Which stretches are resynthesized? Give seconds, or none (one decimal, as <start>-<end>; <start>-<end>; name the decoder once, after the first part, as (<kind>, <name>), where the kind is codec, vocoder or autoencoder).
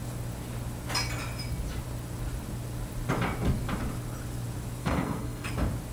4.8-5.5 (codec, SNAC)